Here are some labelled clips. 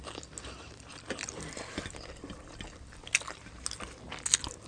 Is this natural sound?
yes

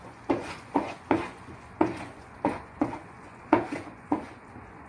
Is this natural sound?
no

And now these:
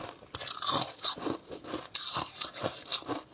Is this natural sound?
yes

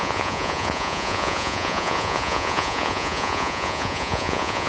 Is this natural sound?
no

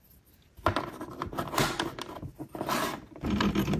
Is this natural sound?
yes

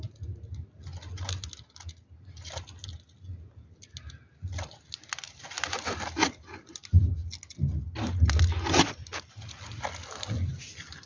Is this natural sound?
yes